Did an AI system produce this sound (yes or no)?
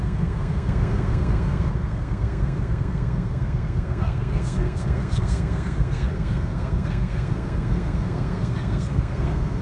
yes